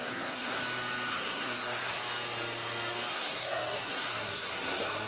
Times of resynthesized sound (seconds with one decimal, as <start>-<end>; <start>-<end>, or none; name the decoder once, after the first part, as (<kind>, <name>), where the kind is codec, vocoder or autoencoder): 0.0-0.6 (codec, SNAC); 1.1-2.0; 3.1-5.1